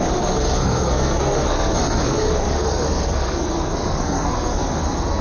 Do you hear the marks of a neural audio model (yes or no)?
yes